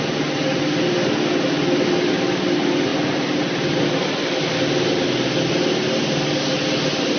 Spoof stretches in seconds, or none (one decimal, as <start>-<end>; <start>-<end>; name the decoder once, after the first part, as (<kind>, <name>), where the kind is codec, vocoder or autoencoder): none